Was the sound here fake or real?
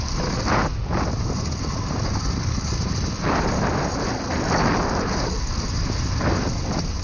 real